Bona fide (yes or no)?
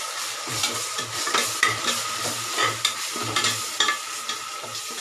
no